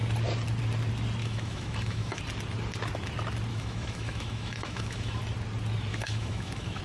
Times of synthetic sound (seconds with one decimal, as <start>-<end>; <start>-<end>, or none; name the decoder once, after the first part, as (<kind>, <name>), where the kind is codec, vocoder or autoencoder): 1.2-2.2 (autoencoder, DAC-VAE); 3.5-5.2; 5.9-6.8